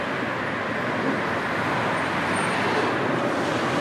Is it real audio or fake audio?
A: real